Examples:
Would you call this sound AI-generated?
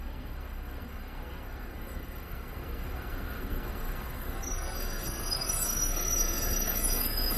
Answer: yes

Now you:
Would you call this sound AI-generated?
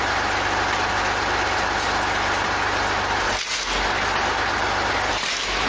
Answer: no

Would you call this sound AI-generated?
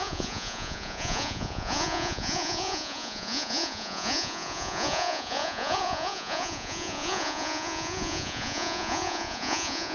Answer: yes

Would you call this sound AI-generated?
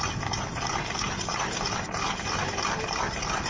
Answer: yes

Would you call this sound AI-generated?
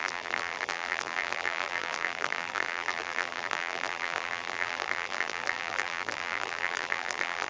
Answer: yes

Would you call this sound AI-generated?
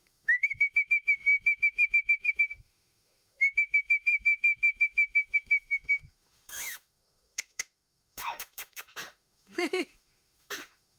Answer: yes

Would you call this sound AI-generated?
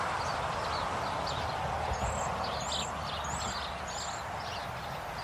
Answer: no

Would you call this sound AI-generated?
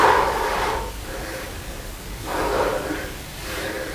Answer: yes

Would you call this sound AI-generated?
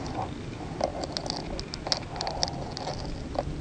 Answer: no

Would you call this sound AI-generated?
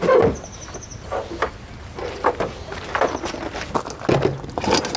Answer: no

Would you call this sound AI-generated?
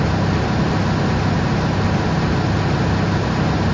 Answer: no